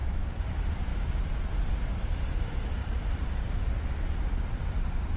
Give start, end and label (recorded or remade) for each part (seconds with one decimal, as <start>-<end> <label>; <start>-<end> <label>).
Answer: 0.0-0.5 remade; 0.5-2.8 recorded; 2.8-3.7 remade; 3.7-5.2 recorded